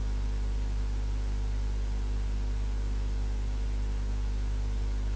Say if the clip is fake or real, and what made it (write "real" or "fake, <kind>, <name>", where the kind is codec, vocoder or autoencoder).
real